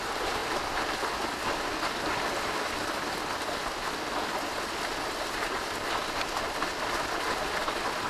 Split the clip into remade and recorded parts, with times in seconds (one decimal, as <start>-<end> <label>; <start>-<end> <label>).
0.0-8.1 recorded